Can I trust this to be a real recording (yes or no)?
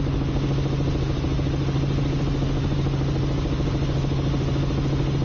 yes